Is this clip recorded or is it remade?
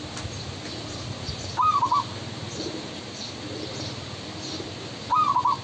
recorded